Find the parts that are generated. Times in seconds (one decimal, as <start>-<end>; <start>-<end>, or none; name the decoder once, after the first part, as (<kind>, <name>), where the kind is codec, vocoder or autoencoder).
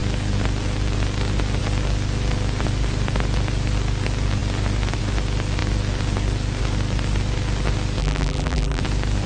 8.0-8.8 (vocoder, BigVGAN v2)